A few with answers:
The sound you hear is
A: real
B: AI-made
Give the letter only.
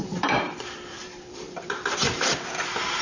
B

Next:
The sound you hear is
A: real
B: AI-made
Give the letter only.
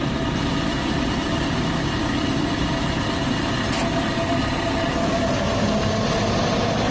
B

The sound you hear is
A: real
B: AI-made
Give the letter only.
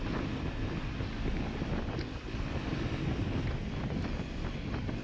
A